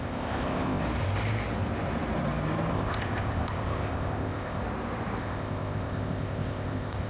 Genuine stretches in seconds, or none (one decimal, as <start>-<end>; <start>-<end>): 0.8-2.7; 4.6-5.2